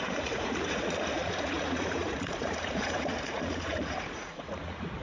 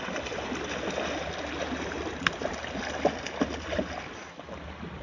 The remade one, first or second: first